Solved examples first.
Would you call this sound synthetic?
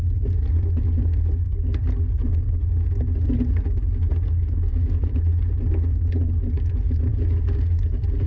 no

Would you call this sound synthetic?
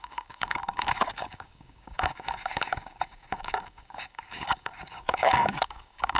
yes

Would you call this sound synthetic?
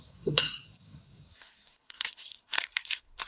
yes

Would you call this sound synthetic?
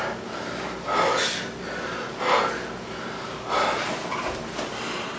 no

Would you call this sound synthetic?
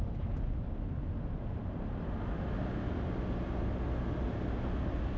no